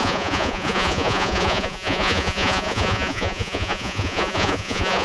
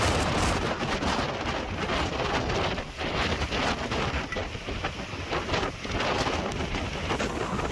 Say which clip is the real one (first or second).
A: second